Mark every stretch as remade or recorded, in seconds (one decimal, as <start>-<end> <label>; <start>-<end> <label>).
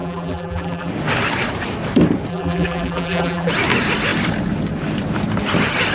0.0-0.9 remade; 0.9-2.3 recorded; 2.3-3.5 remade; 3.5-5.9 recorded